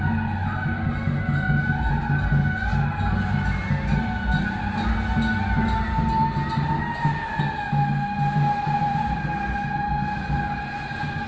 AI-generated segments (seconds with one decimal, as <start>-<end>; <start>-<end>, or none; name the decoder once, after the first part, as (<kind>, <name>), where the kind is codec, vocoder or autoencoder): none

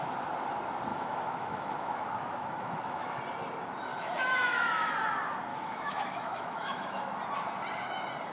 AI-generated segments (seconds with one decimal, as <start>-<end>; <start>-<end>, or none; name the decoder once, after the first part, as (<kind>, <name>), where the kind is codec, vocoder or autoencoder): 0.9-3.2 (autoencoder, DAC-VAE); 3.9-4.9; 5.5-7.1

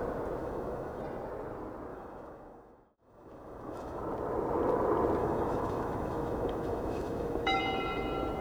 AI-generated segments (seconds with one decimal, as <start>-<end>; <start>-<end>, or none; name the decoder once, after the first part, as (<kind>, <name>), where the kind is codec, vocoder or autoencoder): 0.4-1.0 (autoencoder, DAC-VAE); 1.9-4.0; 5.2-7.6

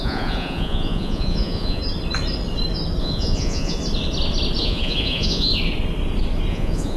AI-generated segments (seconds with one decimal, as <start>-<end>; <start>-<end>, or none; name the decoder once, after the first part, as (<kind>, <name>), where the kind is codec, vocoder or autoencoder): 0.0-1.8 (vocoder, Vocos); 3.0-3.8; 4.6-5.5; 6.5-7.0